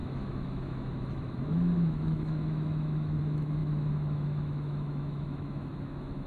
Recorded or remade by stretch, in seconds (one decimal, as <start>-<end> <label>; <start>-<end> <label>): 0.0-6.3 remade